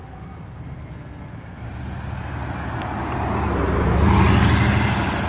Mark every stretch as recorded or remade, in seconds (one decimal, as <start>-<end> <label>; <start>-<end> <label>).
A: 0.0-5.3 recorded